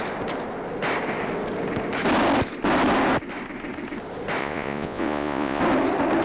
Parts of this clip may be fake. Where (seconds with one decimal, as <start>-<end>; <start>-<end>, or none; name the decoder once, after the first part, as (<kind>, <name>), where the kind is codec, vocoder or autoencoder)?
4.4-5.6 (vocoder, Vocos)

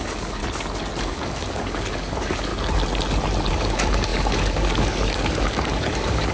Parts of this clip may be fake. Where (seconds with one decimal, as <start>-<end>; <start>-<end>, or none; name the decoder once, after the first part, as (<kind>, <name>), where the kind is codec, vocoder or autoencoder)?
0.0-0.4 (codec, DAC); 1.0-2.5; 3.5-6.3

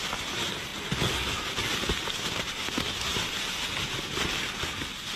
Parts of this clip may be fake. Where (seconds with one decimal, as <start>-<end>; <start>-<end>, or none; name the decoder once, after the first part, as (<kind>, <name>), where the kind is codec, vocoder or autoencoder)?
none

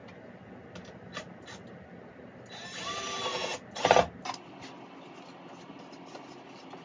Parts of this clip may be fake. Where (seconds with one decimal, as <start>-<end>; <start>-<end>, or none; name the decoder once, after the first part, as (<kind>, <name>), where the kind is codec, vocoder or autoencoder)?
none

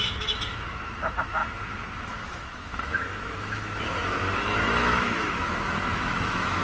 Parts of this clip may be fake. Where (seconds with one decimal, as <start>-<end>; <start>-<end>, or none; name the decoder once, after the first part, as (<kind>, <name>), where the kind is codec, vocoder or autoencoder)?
0.0-6.6 (autoencoder, DAC-VAE)

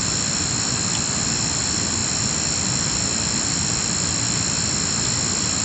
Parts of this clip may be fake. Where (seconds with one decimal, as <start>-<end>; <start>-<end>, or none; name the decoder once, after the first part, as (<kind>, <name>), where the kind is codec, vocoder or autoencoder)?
none